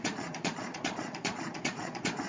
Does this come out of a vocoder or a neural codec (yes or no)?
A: yes